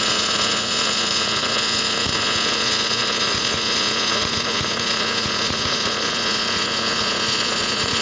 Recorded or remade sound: remade